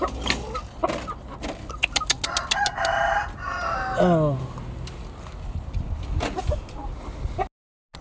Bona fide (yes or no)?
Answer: yes